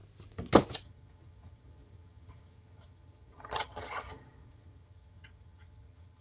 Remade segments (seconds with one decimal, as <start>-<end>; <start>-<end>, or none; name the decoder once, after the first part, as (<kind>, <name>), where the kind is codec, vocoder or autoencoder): 0.8-6.2 (vocoder, HiFi-GAN)